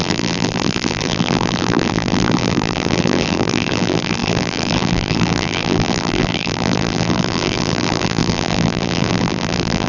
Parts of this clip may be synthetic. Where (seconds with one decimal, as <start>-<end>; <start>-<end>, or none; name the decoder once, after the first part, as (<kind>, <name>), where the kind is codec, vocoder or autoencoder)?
0.0-9.9 (vocoder, BigVGAN v2)